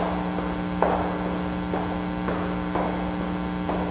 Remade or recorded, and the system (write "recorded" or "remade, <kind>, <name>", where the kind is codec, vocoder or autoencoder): recorded